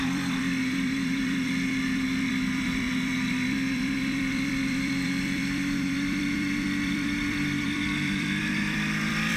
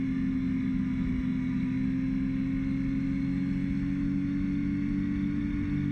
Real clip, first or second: second